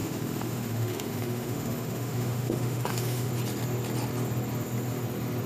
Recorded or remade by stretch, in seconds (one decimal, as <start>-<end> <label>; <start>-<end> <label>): 0.0-3.3 remade; 3.3-5.5 recorded